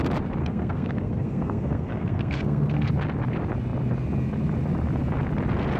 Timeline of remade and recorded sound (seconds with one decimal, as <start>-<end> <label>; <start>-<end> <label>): 0.0-0.4 recorded; 0.4-2.9 remade; 2.9-5.8 recorded